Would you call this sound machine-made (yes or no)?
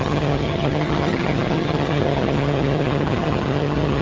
yes